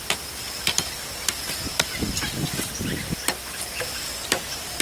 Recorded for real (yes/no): yes